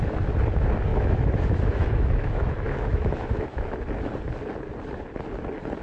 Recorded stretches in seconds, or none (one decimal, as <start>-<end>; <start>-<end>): 0.0-0.9; 3.7-5.8